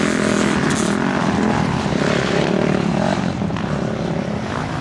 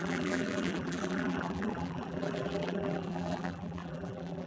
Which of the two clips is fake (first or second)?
second